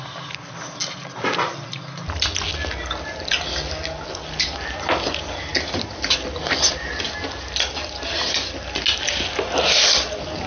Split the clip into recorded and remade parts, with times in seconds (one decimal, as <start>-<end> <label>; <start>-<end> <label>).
0.0-10.5 recorded